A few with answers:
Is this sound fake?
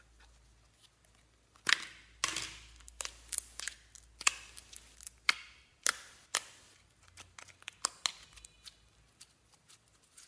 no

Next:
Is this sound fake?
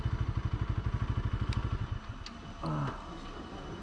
no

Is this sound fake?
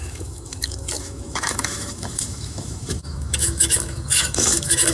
yes